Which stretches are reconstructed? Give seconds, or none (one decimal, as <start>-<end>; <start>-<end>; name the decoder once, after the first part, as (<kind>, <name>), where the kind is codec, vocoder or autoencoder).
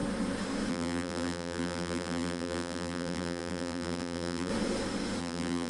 0.7-4.5 (vocoder, BigVGAN v2); 5.2-5.7